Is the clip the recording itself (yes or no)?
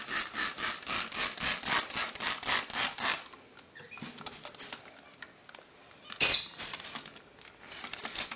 yes